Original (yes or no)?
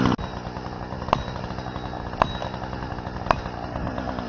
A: yes